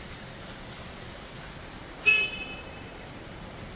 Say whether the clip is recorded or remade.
remade